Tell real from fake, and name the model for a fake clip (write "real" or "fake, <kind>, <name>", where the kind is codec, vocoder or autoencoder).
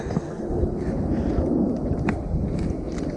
real